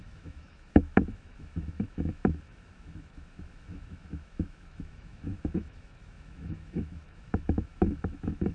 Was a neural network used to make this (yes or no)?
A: yes